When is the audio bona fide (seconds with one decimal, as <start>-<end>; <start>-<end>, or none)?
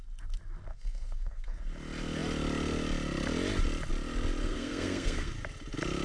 0.0-0.7; 1.6-4.4; 5.3-6.0